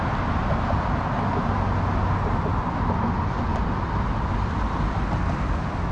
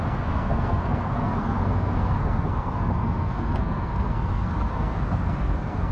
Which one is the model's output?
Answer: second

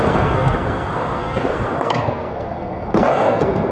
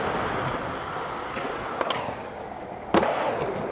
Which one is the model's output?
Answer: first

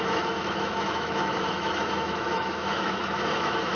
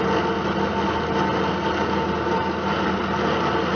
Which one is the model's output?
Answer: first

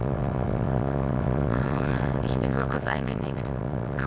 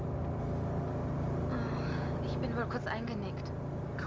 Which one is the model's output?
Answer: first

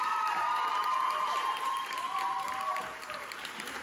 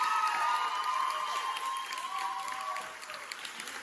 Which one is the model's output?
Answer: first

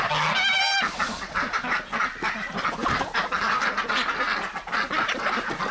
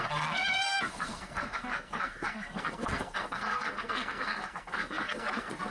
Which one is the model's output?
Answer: second